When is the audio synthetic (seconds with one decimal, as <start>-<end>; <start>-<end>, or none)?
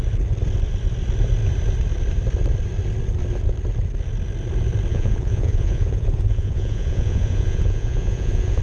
4.9-8.6